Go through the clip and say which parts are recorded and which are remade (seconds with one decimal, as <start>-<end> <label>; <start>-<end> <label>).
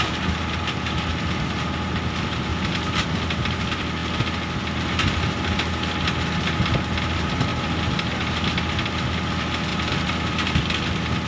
0.0-2.5 recorded; 2.5-3.6 remade; 3.6-9.7 recorded; 9.7-10.3 remade; 10.3-11.3 recorded